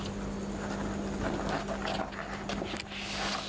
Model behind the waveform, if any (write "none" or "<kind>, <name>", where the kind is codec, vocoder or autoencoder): none